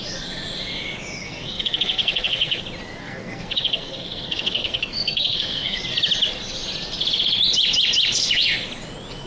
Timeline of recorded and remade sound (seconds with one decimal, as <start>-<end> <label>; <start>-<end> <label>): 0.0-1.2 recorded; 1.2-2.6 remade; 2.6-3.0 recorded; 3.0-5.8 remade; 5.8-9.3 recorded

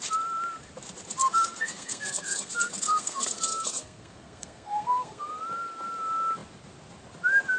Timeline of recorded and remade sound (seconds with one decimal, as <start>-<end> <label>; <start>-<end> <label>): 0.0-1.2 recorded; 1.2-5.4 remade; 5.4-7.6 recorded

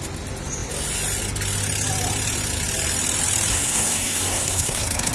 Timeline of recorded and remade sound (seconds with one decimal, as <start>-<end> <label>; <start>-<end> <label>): 0.0-3.5 recorded; 3.5-5.1 remade

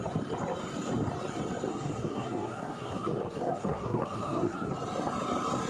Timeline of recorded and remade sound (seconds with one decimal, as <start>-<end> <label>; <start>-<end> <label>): 0.0-1.7 recorded; 1.7-4.7 remade; 4.7-5.7 recorded

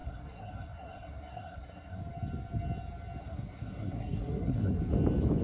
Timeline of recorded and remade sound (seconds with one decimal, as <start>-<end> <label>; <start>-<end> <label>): 0.0-2.0 remade; 2.0-3.2 recorded; 3.2-4.8 remade; 4.8-5.4 recorded

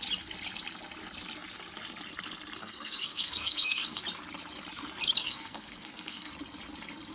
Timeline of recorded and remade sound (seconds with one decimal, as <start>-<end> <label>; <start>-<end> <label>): 0.0-2.6 recorded; 2.6-4.0 remade; 4.0-5.2 recorded; 5.2-6.3 remade; 6.3-7.1 recorded

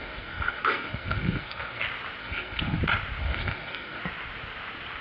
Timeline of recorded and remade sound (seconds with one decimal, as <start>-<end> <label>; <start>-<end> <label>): 0.0-1.8 remade; 1.8-2.2 recorded; 2.2-2.8 remade; 2.8-3.2 recorded; 3.2-4.0 remade; 4.0-5.0 recorded

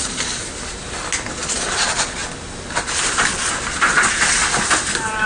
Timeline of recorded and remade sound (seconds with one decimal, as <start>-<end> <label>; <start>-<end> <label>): 0.0-5.3 recorded